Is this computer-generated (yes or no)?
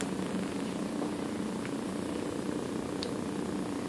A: no